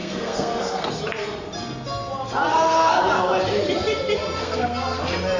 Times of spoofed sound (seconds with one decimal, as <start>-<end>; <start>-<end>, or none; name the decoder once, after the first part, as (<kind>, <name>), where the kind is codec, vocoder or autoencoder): 0.0-0.9 (codec, SNAC); 2.5-3.0; 4.4-5.0